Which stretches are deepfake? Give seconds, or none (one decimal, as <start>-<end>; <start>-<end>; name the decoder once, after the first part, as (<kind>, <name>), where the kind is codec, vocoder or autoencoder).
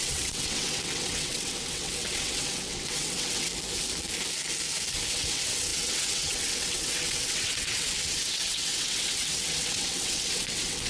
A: 0.0-3.5 (vocoder, WaveNeXt); 5.1-10.9